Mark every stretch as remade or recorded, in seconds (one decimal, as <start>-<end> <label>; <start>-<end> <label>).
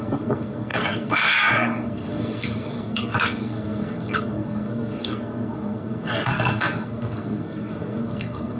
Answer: 0.0-8.6 remade